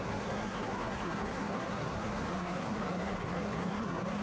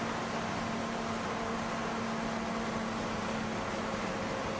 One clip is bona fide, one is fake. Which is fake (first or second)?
first